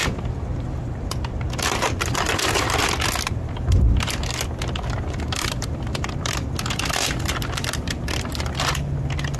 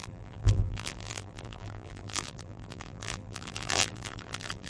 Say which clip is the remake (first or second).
second